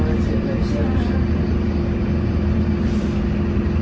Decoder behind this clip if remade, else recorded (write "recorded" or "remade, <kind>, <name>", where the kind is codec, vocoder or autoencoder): recorded